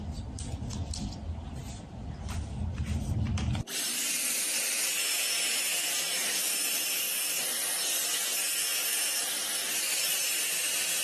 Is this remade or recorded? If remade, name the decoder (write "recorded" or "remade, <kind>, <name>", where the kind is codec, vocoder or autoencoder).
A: recorded